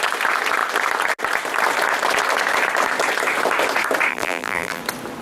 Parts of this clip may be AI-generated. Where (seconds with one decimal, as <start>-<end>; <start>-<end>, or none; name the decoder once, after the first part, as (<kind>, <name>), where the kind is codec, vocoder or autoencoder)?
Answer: 4.1-4.8 (vocoder, BigVGAN v2)